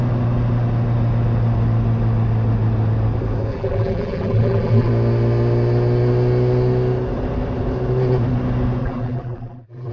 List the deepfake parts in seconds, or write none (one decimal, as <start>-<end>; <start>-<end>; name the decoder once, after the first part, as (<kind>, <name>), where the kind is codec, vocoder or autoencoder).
3.5-4.9 (vocoder, BigVGAN v2); 8.8-9.9